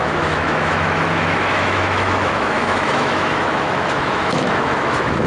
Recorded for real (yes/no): no